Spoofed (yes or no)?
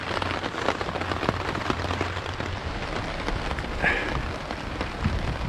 no